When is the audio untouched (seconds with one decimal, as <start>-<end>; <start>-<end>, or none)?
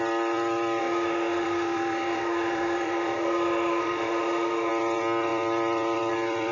0.0-0.8; 4.7-6.5